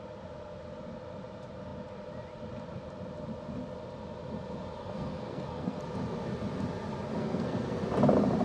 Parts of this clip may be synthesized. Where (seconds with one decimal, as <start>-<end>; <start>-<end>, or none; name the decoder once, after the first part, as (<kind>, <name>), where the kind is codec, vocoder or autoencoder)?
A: 4.8-5.8 (codec, SNAC); 7.1-7.8